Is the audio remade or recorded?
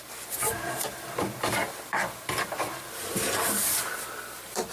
remade